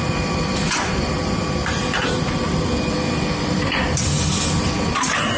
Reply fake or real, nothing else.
real